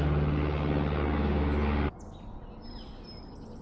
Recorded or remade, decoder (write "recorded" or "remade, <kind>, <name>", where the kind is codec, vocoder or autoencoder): recorded